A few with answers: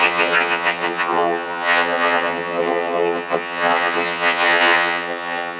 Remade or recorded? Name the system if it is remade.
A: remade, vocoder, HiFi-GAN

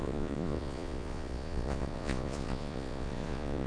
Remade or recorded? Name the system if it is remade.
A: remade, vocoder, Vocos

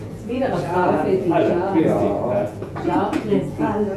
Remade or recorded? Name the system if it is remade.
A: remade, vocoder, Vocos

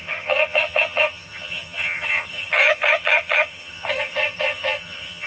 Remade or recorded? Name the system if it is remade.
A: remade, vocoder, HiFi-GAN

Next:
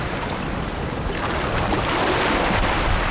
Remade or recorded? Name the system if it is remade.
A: recorded